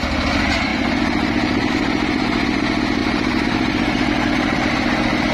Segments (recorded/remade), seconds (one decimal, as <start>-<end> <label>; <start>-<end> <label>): 0.0-3.0 recorded; 3.0-4.1 remade; 4.1-5.3 recorded